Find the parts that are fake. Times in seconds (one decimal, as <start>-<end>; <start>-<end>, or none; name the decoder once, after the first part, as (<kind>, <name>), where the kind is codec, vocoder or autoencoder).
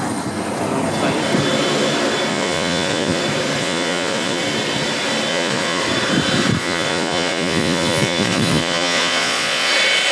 2.3-3.2 (vocoder, Vocos); 3.6-4.4; 5.3-5.8; 6.6-9.7